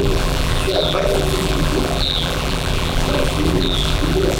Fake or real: fake